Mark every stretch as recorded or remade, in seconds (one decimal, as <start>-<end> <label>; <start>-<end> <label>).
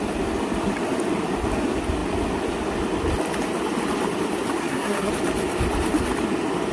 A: 0.0-4.6 recorded; 4.6-5.1 remade; 5.1-6.7 recorded